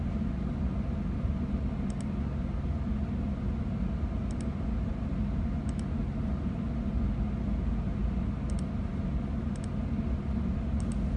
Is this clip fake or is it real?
real